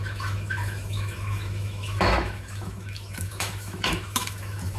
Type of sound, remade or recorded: remade